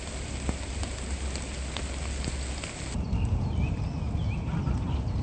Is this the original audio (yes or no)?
yes